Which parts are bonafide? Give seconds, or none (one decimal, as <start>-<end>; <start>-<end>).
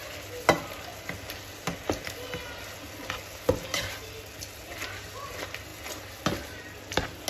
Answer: 0.0-7.3